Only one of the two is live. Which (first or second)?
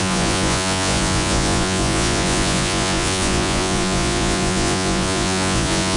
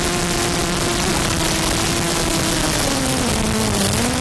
second